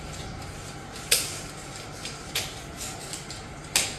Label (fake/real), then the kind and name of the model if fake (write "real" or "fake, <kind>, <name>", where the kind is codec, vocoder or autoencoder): real